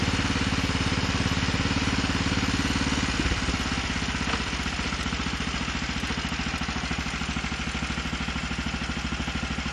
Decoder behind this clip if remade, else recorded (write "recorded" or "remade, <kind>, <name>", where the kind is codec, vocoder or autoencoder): recorded